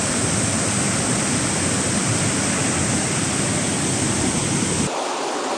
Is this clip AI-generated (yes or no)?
no